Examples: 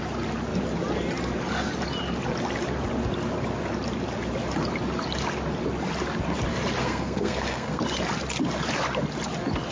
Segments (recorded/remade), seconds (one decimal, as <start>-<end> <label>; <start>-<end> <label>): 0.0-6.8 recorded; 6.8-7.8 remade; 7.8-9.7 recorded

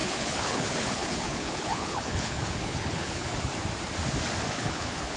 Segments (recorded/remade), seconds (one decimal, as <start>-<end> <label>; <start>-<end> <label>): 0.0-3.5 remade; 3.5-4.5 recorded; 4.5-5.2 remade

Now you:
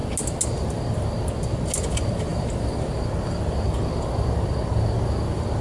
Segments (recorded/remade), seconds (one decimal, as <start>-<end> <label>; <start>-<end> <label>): 0.0-5.6 recorded

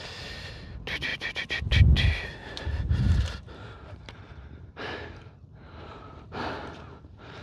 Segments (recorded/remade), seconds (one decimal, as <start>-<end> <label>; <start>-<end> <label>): 0.0-2.4 recorded; 2.4-6.5 remade; 6.5-7.4 recorded